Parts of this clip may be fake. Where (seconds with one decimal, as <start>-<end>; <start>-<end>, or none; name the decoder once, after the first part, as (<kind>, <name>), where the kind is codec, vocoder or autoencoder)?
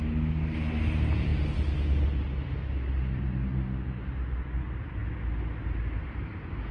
none